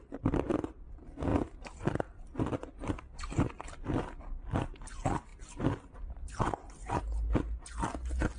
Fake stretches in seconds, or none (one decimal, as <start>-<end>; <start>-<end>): 1.3-2.4; 5.3-7.0